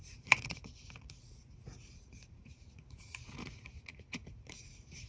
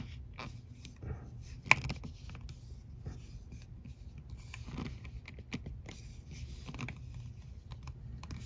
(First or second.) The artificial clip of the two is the first